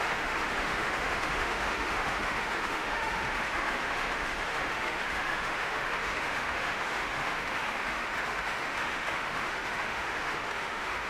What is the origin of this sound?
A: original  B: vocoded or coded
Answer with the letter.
B